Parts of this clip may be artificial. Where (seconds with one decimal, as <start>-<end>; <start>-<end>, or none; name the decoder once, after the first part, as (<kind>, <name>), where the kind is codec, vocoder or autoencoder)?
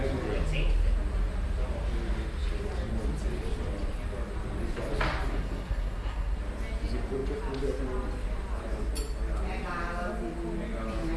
5.3-6.4 (codec, SNAC)